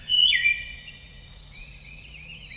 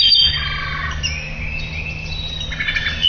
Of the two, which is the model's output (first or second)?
first